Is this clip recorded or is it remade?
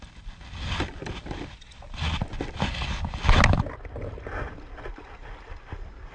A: recorded